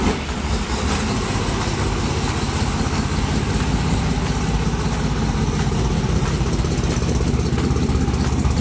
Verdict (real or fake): real